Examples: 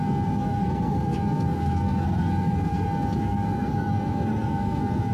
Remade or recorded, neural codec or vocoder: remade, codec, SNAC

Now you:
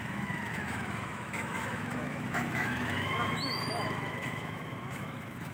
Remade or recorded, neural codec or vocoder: remade, autoencoder, DAC-VAE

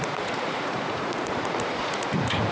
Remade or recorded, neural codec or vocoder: remade, vocoder, Vocos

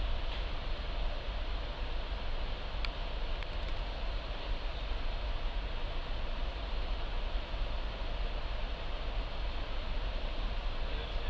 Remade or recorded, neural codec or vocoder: recorded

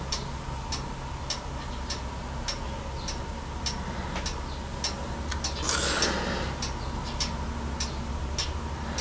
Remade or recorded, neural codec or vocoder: recorded